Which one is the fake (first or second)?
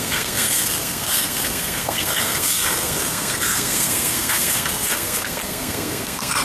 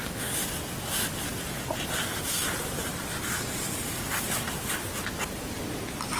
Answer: first